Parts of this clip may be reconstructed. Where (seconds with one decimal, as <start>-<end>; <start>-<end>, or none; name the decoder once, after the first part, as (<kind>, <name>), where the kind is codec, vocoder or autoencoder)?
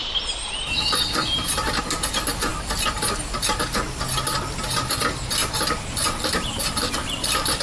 5.4-7.6 (vocoder, BigVGAN v2)